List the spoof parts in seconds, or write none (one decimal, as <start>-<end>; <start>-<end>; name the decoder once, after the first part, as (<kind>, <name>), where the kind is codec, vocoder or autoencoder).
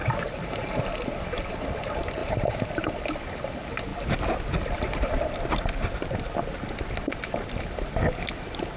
0.0-0.8 (vocoder, BigVGAN v2); 2.2-2.9